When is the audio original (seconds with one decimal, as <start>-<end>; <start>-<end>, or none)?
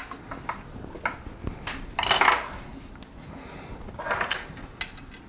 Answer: 0.0-5.3